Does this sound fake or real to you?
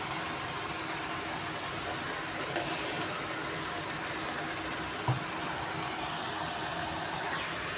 real